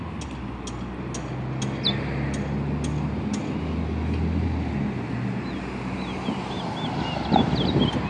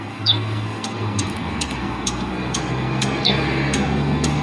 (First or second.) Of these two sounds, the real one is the first